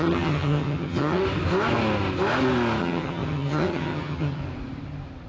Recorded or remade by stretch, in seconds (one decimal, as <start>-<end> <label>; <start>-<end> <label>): 0.0-1.2 remade; 1.2-2.8 recorded; 2.8-4.4 remade; 4.4-5.3 recorded